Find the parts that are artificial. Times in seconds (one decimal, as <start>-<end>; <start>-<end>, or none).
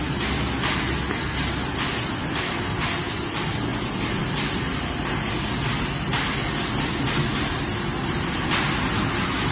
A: none